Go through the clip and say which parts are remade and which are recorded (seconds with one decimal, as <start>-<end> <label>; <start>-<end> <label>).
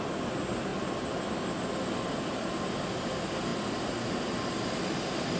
0.0-5.4 recorded